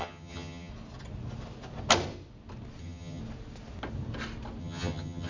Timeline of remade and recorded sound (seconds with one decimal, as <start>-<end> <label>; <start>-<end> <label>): 0.0-0.7 remade; 0.7-2.8 recorded; 2.8-3.2 remade; 3.2-4.6 recorded; 4.6-5.3 remade